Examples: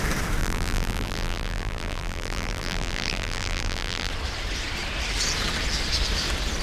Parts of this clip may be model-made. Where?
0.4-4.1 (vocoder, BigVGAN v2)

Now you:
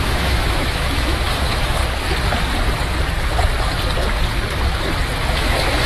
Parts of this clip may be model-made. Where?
0.0-1.8 (autoencoder, DAC-VAE); 5.3-5.9

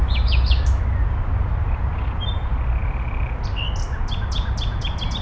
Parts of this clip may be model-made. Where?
0.0-0.8 (autoencoder, DAC-VAE)

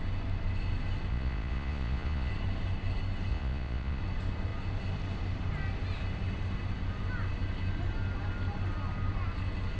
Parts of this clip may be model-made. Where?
1.1-2.3 (vocoder, Vocos); 3.3-4.0

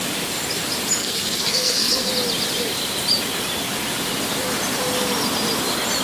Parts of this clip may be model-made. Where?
1.0-2.1 (codec, SNAC)

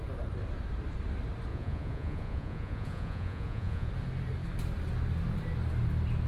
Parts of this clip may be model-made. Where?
1.5-3.9 (vocoder, Vocos)

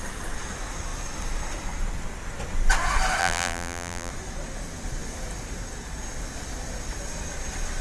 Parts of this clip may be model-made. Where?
3.2-4.1 (vocoder, BigVGAN v2)